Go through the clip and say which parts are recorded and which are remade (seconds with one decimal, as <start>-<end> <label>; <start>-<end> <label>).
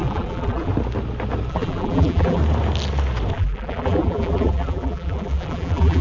0.0-0.7 remade; 0.7-1.5 recorded; 1.5-2.4 remade; 2.4-3.3 recorded; 3.3-6.0 remade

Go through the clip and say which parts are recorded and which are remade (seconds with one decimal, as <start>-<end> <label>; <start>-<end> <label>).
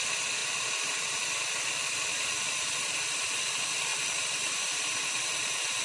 0.0-3.9 recorded; 3.9-5.1 remade; 5.1-5.8 recorded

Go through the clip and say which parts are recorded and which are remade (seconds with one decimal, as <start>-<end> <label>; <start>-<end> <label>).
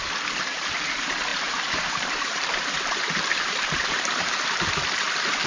0.0-1.3 recorded; 1.3-4.6 remade; 4.6-5.5 recorded